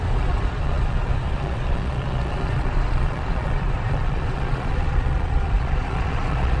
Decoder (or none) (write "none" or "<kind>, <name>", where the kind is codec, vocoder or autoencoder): vocoder, Vocos